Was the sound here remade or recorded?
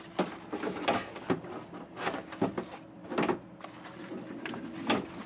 recorded